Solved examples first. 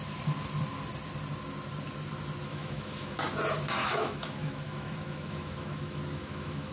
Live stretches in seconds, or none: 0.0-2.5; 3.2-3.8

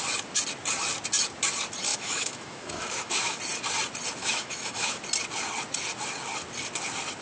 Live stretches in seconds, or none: 0.0-1.9; 3.4-4.2; 5.0-7.2